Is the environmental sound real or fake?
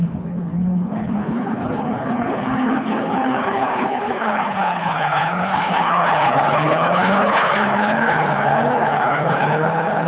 fake